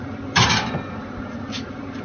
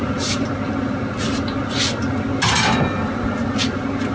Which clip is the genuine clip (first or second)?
second